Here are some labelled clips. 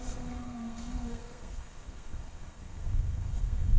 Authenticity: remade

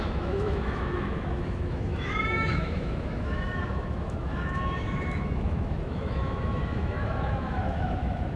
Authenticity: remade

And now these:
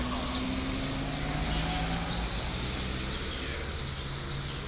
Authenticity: recorded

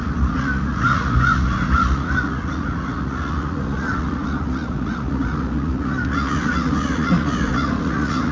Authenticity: remade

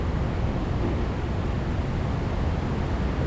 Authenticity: recorded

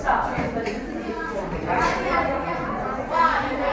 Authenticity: remade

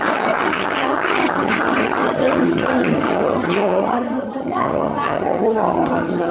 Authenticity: remade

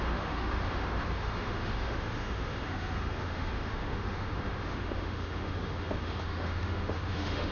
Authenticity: remade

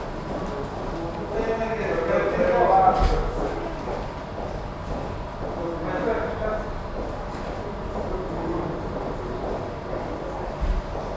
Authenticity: recorded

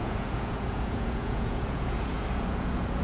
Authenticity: remade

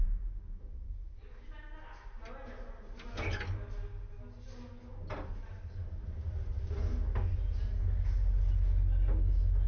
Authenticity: recorded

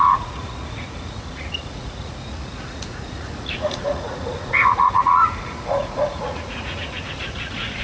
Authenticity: remade